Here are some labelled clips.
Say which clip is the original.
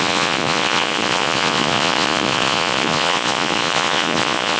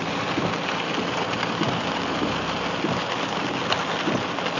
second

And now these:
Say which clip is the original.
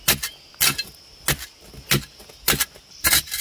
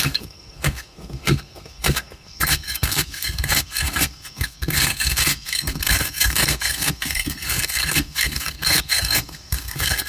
first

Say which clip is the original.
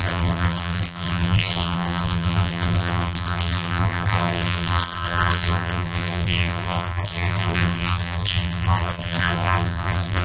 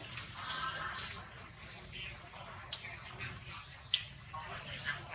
second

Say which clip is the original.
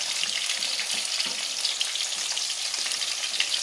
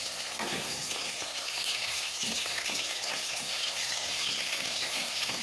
first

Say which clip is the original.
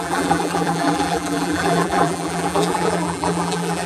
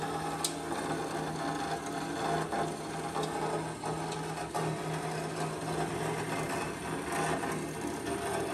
second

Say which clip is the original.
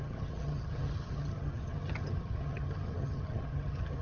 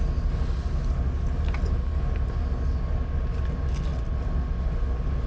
second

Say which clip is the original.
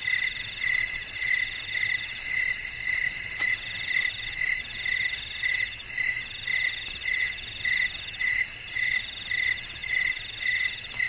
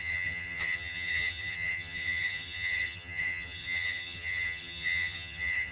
first